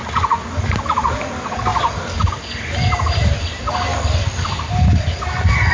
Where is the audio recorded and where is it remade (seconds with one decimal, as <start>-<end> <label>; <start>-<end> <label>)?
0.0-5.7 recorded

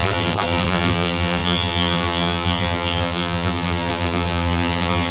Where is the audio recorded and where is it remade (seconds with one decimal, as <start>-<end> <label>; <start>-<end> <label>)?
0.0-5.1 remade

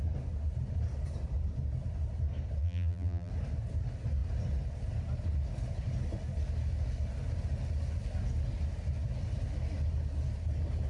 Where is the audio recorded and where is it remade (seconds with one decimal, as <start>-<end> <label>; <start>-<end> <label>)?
0.0-2.6 recorded; 2.6-3.3 remade; 3.3-10.9 recorded

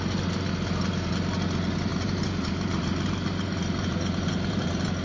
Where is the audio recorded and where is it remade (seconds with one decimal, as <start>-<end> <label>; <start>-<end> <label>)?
0.0-1.9 recorded; 1.9-5.0 remade